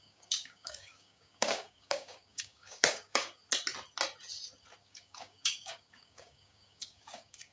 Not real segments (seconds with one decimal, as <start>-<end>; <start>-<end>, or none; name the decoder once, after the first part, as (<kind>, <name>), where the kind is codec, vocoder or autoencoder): 0.0-3.4 (codec, DAC); 4.8-7.5